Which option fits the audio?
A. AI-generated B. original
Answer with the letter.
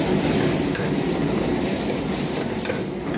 B